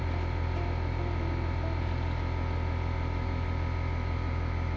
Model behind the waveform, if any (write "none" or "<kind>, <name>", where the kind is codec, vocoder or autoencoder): none